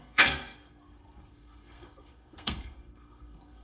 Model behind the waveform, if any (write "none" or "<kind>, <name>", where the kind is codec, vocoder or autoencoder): codec, SNAC